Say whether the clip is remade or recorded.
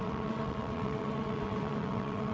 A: remade